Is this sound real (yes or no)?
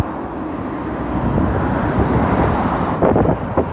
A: yes